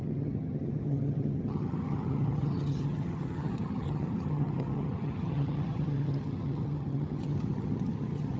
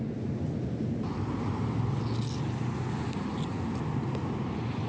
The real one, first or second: second